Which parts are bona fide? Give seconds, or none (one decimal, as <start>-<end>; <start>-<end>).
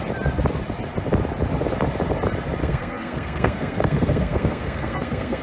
0.0-2.6